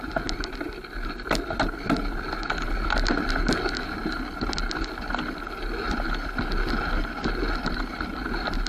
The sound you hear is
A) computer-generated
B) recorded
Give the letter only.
B